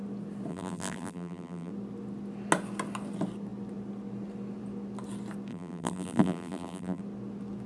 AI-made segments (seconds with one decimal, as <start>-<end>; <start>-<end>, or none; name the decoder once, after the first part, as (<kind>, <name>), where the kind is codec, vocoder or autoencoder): 0.5-1.7 (vocoder, BigVGAN v2); 5.5-7.0